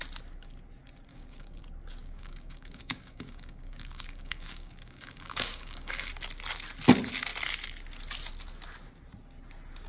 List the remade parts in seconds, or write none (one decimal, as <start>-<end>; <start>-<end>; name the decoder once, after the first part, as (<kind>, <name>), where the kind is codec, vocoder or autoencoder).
1.1-1.6 (codec, DAC); 2.0-6.1